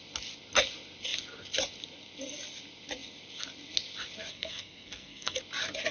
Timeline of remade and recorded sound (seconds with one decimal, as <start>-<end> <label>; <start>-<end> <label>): 0.0-4.3 recorded; 4.3-5.4 remade; 5.4-5.9 recorded